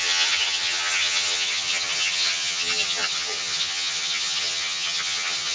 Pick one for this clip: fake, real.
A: fake